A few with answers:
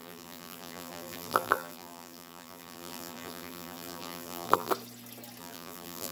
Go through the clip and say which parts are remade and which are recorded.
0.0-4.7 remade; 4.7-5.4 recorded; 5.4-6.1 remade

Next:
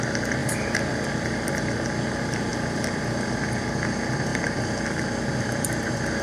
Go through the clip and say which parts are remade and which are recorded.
0.0-0.4 recorded; 0.4-1.9 remade; 1.9-2.5 recorded; 2.5-3.0 remade; 3.0-4.3 recorded; 4.3-5.8 remade; 5.8-6.2 recorded

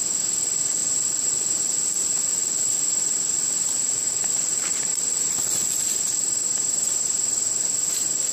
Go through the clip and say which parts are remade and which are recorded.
0.0-0.8 recorded; 0.8-5.8 remade; 5.8-8.3 recorded

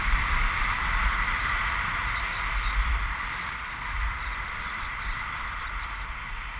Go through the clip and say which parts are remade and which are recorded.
0.0-1.4 remade; 1.4-2.9 recorded; 2.9-6.6 remade

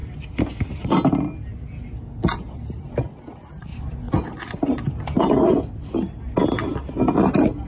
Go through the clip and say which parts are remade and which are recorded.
0.0-7.7 recorded

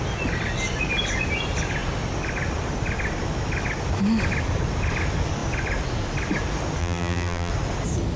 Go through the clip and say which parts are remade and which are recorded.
0.0-6.8 recorded; 6.8-7.5 remade; 7.5-8.2 recorded